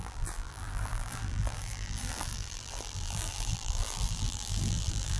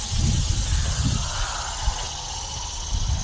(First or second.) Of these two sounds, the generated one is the first